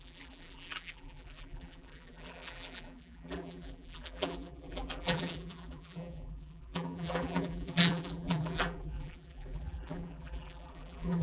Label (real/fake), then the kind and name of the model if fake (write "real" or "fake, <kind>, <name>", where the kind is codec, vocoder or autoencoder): fake, vocoder, BigVGAN v2